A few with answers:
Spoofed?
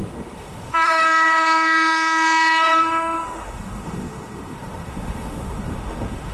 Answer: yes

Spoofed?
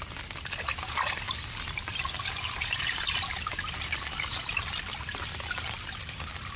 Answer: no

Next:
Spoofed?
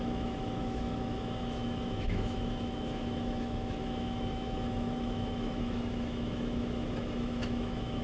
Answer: yes